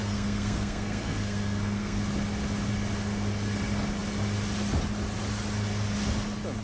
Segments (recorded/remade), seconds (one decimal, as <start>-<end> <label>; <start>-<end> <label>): 0.0-2.0 remade; 2.0-6.6 recorded